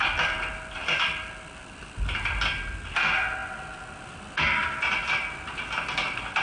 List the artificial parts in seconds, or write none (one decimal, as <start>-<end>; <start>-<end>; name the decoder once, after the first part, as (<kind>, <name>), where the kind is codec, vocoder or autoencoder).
0.8-2.2 (vocoder, BigVGAN v2); 3.4-4.2